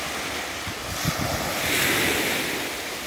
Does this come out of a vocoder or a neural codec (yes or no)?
no